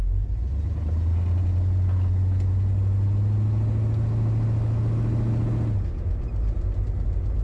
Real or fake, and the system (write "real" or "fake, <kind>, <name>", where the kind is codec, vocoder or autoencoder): real